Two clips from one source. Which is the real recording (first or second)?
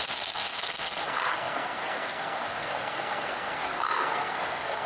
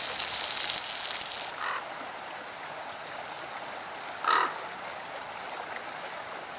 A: second